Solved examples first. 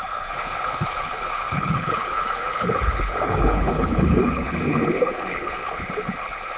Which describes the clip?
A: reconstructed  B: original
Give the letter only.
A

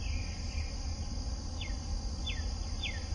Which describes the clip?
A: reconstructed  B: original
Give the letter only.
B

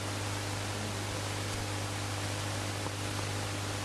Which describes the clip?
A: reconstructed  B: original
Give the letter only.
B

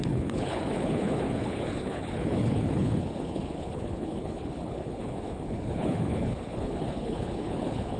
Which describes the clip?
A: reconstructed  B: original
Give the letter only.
A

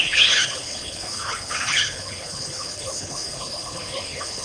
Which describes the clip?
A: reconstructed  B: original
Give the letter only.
A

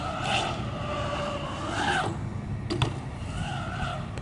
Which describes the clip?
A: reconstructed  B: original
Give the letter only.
B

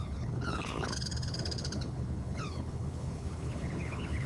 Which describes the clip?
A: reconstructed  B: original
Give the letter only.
A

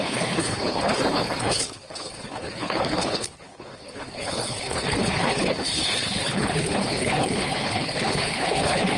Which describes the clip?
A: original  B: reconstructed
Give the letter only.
B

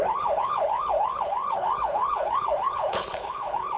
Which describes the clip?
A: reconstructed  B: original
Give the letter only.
A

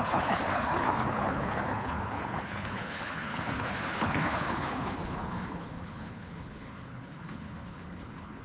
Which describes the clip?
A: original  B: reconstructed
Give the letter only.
B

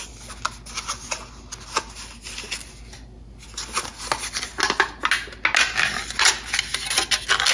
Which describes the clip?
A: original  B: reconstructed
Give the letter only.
A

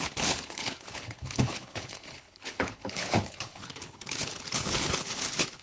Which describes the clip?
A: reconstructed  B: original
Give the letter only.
A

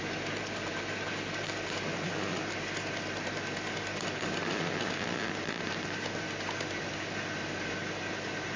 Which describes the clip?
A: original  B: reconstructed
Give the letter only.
A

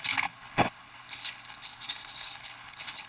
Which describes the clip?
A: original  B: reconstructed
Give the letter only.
B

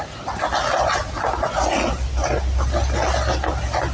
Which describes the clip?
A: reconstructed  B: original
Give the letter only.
B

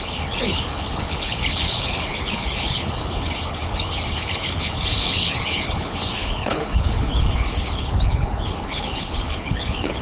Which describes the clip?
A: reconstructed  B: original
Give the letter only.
A